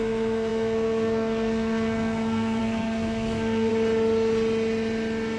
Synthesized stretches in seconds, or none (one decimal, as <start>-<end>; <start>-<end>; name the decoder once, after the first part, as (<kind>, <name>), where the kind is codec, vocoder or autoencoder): 0.0-3.7 (codec, SNAC)